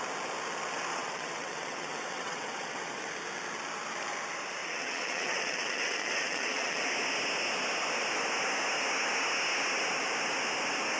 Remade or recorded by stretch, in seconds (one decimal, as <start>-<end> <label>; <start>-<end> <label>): 0.0-0.9 recorded; 0.9-3.1 remade; 3.1-4.6 recorded; 4.6-6.8 remade; 6.8-11.0 recorded